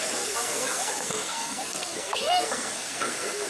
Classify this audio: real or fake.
fake